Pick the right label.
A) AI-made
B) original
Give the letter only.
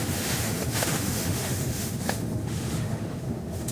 A